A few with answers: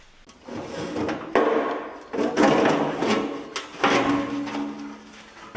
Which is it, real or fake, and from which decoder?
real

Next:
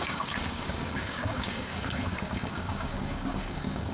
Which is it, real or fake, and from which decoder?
fake, codec, DAC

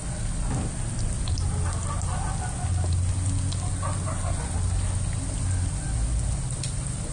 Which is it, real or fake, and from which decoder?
real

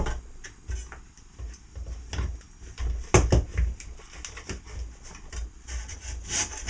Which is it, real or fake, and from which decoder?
real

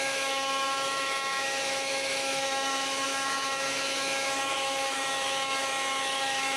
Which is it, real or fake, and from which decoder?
fake, autoencoder, DAC-VAE